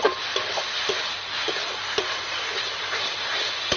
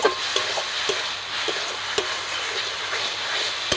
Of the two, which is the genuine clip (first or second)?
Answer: second